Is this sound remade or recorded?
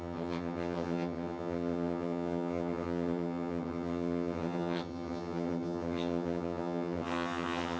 remade